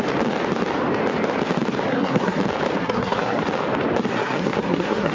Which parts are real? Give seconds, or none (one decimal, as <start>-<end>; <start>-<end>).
0.0-1.9; 2.4-2.8; 3.4-4.1